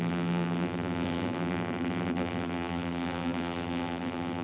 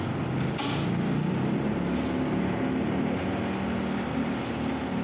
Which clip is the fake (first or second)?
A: first